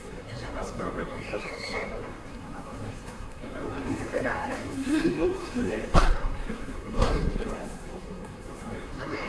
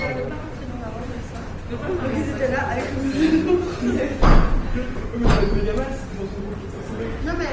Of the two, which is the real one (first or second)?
second